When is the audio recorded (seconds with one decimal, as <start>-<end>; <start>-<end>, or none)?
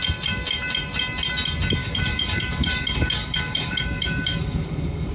0.0-1.8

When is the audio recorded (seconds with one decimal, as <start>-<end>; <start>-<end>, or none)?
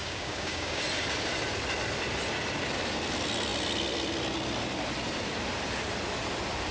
0.8-6.7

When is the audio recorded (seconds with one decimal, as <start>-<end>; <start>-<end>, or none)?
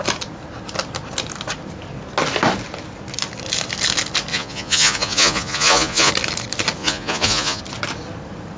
0.0-4.3; 6.1-6.8; 7.6-8.6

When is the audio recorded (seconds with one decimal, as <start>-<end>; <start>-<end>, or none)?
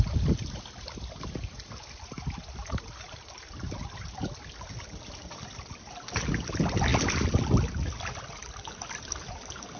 0.0-9.8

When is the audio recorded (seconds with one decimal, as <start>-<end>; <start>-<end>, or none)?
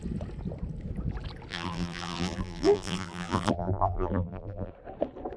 0.0-1.5; 4.7-5.4